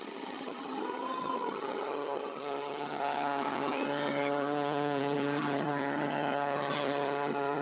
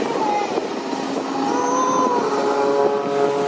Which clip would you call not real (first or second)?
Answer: first